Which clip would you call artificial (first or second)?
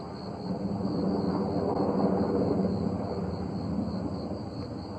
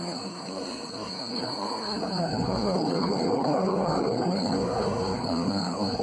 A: second